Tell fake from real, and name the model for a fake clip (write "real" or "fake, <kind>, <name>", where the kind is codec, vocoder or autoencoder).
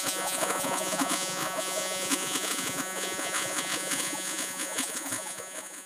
fake, vocoder, Vocos